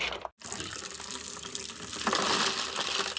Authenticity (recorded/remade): recorded